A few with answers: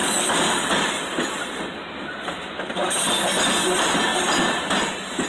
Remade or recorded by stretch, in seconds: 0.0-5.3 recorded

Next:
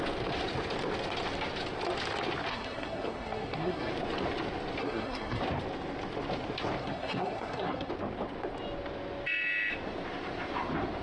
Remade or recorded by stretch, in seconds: 0.0-2.5 recorded; 2.5-3.9 remade; 3.9-4.8 recorded; 4.8-5.4 remade; 5.4-6.8 recorded; 6.8-7.9 remade; 7.9-11.0 recorded

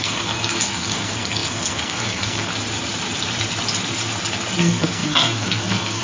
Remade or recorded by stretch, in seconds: 0.0-2.5 remade; 2.5-4.6 recorded; 4.6-6.0 remade

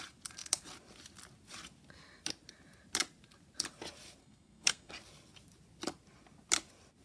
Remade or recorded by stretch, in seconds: 0.0-4.2 recorded; 4.2-4.9 remade; 4.9-7.0 recorded

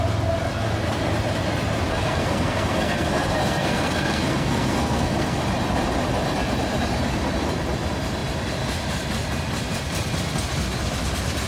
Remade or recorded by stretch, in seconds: 0.0-1.9 recorded; 1.9-5.4 remade; 5.4-11.5 recorded